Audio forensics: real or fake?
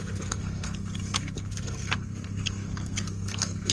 fake